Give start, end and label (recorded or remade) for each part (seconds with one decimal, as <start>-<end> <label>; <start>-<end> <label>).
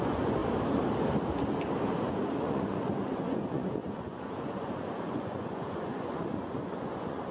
0.0-0.4 remade; 0.4-2.1 recorded; 2.1-7.3 remade